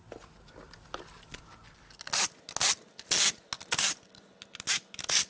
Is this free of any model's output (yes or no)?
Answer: yes